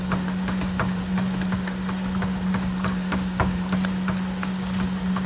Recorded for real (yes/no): yes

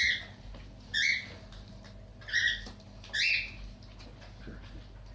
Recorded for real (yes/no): yes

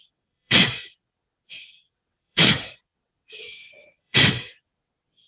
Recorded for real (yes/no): no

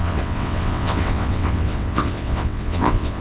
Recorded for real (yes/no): no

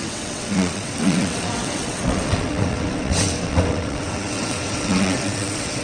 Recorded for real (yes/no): no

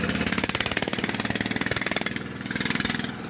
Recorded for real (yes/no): yes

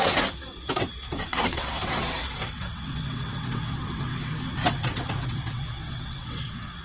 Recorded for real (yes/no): no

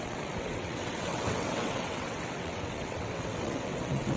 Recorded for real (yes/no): no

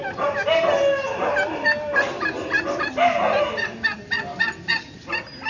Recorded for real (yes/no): yes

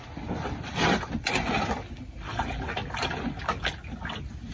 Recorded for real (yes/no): yes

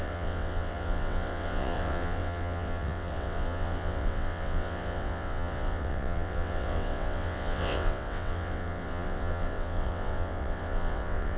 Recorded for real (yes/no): no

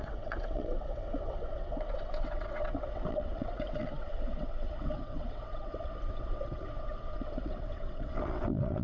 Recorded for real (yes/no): no